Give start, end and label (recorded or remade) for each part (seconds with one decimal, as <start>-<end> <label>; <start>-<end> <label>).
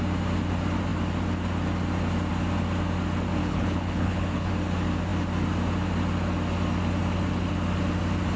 0.0-3.4 recorded; 3.4-4.5 remade; 4.5-8.4 recorded